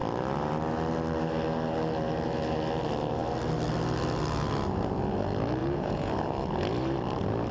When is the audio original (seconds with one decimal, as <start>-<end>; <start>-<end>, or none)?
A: 0.0-5.6; 6.1-7.5